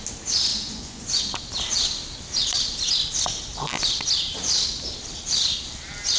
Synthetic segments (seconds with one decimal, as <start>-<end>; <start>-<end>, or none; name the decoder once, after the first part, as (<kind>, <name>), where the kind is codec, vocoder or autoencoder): 0.5-1.2 (vocoder, Vocos)

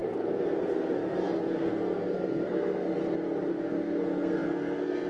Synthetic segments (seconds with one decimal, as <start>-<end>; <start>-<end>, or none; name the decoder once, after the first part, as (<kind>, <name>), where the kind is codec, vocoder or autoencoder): 0.0-2.9 (codec, SNAC); 3.5-5.1

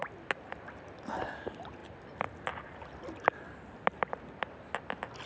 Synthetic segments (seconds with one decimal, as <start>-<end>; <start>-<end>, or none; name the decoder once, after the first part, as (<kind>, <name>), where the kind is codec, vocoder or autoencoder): none

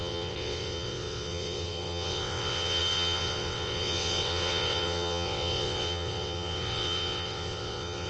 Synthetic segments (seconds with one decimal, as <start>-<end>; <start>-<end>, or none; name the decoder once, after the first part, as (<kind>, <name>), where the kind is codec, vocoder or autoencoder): 0.0-8.1 (vocoder, WaveNeXt)